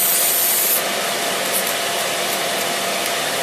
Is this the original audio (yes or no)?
yes